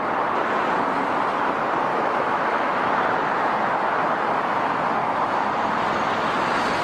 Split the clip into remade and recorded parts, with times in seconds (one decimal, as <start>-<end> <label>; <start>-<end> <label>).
0.0-1.9 recorded; 1.9-2.9 remade; 2.9-5.0 recorded; 5.0-5.5 remade; 5.5-6.8 recorded